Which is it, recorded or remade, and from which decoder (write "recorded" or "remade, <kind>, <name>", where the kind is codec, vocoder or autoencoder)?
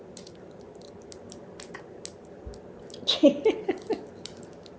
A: recorded